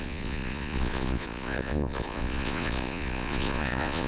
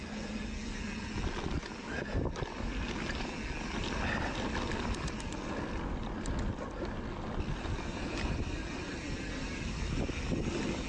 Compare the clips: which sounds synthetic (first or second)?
first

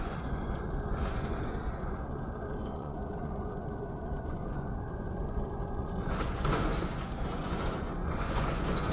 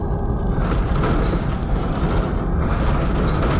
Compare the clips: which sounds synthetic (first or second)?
first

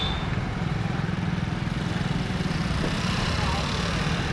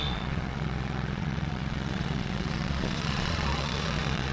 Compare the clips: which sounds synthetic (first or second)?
second